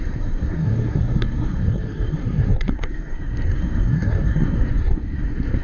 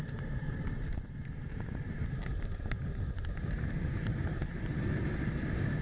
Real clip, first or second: second